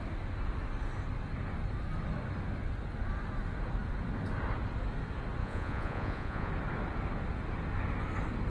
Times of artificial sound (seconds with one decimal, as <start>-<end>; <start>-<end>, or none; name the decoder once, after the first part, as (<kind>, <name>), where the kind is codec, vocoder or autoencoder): 5.4-6.5 (vocoder, Vocos)